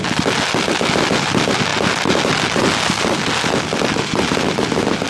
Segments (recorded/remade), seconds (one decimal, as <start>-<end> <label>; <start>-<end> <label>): 0.0-5.1 recorded